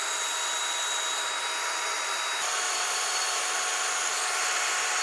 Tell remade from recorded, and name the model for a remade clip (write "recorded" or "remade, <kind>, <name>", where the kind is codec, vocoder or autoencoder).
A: remade, vocoder, BigVGAN v2